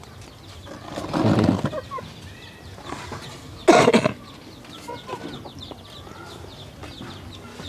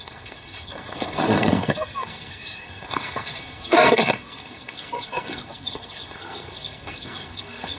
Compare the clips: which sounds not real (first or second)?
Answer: second